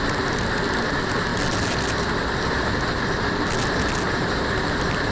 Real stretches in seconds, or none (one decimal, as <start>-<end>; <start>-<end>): 0.0-5.1